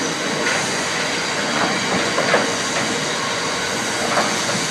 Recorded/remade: remade